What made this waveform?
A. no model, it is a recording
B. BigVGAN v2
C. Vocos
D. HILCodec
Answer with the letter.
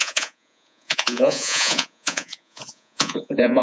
C